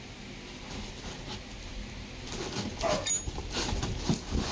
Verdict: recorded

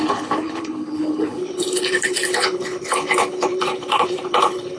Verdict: remade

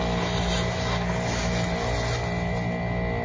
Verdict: recorded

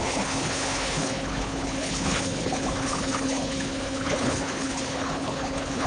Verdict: remade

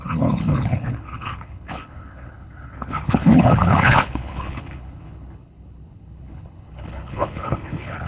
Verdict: remade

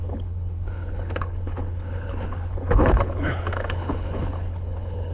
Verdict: remade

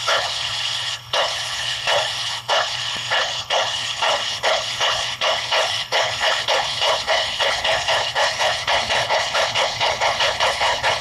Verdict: remade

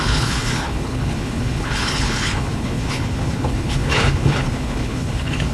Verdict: remade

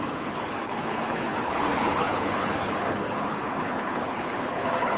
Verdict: remade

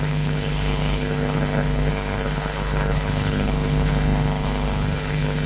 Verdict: remade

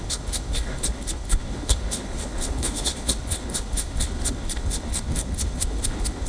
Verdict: remade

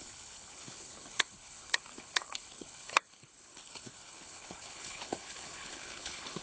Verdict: remade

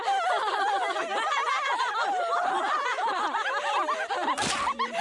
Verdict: recorded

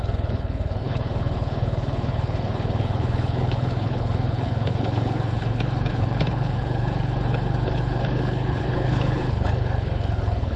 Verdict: remade